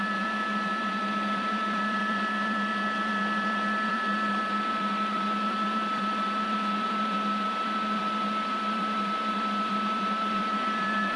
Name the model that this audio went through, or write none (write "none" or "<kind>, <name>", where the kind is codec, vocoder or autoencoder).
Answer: vocoder, BigVGAN v2